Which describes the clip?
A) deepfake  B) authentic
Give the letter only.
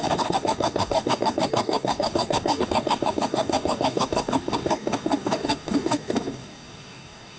A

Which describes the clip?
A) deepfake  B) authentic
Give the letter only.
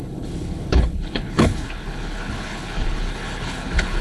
A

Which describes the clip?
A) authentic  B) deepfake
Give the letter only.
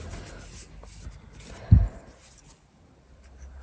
A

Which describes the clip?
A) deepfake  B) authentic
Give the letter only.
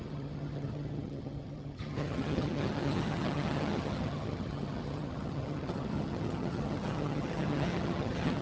A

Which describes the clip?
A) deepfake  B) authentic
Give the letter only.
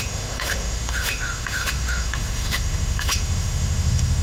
A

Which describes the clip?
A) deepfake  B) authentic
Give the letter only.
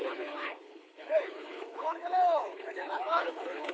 A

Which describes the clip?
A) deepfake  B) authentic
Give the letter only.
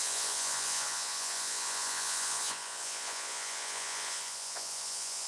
A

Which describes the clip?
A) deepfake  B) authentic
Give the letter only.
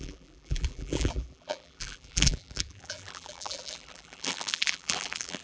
A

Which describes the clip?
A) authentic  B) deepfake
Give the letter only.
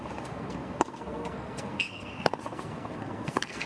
B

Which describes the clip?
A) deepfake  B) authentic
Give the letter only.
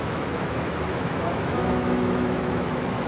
A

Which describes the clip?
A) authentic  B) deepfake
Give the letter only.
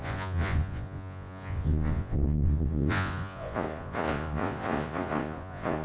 B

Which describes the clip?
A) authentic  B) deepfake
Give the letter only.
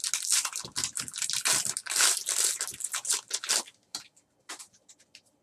A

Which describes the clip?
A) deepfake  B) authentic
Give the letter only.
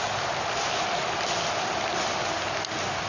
B